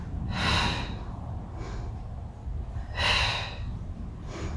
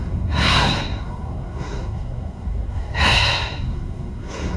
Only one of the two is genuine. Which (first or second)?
first